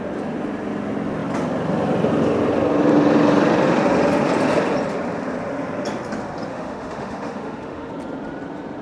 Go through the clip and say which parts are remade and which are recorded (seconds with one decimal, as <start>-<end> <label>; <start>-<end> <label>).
0.0-6.5 recorded; 6.5-7.9 remade; 7.9-8.8 recorded